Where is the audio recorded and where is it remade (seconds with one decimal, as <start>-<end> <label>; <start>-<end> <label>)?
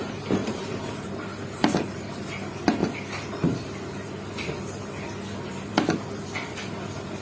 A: 0.0-0.4 recorded; 0.4-2.1 remade; 2.1-2.8 recorded; 2.8-6.7 remade; 6.7-7.2 recorded